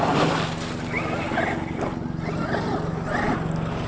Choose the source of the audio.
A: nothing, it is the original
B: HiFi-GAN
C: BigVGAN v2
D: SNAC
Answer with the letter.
A